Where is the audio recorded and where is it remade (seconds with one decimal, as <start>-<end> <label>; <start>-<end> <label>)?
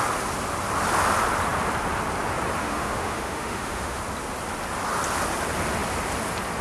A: 0.0-2.6 recorded; 2.6-4.0 remade; 4.0-6.6 recorded